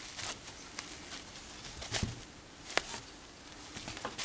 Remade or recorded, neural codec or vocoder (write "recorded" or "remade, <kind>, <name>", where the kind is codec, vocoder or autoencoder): recorded